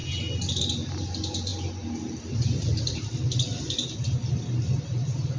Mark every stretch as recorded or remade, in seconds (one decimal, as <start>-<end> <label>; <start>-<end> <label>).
0.0-5.4 recorded